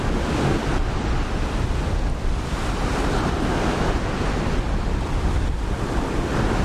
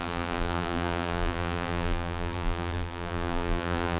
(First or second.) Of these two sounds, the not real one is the second